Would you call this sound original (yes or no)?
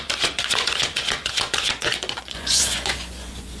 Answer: no